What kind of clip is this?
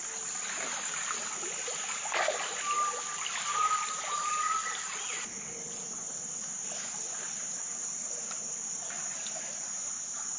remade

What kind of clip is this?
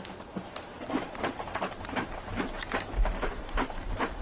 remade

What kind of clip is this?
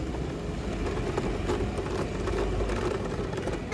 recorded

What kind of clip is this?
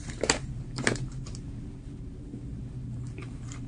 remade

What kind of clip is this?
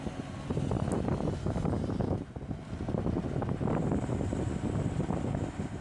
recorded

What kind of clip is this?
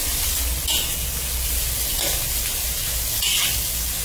recorded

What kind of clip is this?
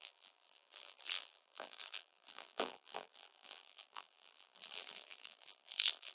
remade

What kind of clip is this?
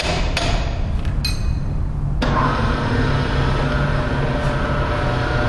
recorded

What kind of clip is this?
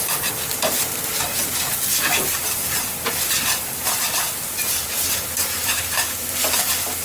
remade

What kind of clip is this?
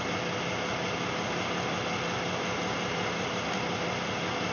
recorded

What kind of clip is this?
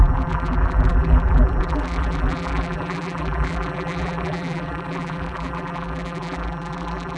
remade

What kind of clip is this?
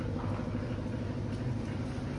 recorded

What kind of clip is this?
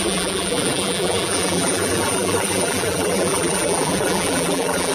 remade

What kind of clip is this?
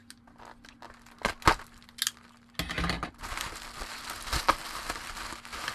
recorded